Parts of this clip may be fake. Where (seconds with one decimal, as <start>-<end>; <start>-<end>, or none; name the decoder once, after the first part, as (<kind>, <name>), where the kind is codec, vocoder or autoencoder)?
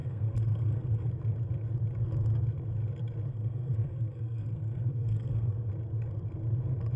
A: 0.0-1.1 (codec, SNAC); 3.3-5.7